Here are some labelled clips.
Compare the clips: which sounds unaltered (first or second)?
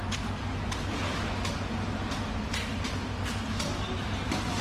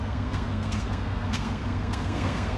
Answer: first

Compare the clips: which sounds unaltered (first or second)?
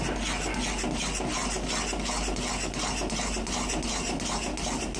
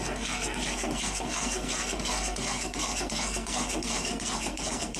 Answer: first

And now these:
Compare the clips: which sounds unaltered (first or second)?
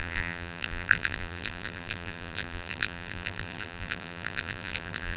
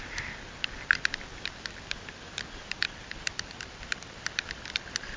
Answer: second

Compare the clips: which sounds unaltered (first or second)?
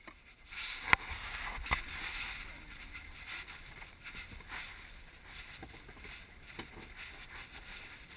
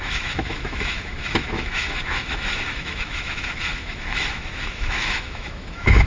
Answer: first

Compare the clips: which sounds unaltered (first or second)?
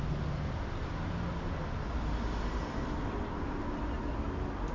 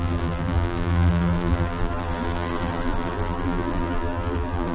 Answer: first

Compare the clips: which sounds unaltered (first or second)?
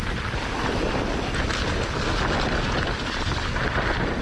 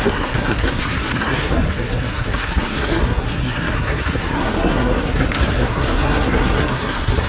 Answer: first